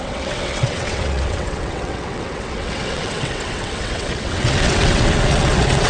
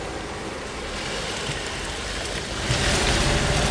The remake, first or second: first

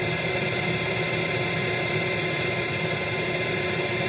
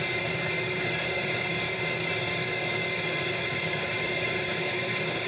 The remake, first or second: second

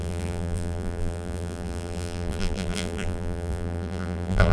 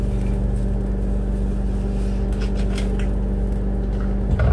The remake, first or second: first